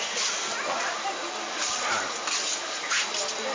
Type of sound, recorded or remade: recorded